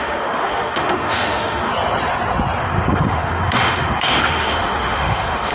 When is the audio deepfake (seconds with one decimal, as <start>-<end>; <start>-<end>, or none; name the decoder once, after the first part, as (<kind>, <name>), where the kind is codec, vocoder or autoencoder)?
0.0-1.7 (autoencoder, DAC-VAE); 2.6-5.5